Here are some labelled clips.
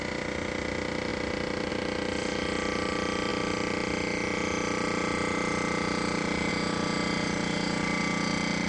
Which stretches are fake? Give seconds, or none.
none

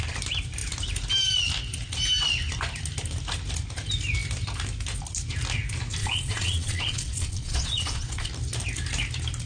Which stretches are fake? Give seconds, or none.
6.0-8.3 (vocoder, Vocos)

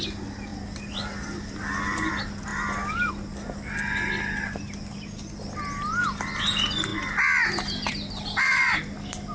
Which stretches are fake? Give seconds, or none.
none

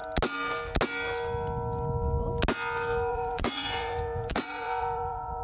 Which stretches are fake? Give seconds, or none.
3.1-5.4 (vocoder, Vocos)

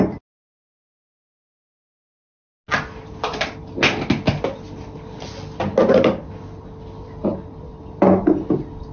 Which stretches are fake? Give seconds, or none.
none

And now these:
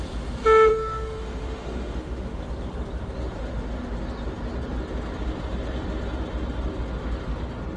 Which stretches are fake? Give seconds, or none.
0.7-2.4 (autoencoder, DAC-VAE)